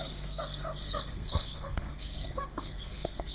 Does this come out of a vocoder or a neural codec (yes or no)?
yes